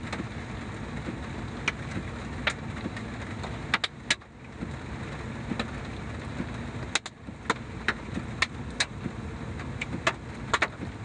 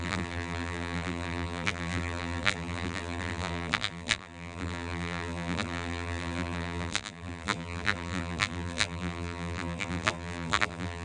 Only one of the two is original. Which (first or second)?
first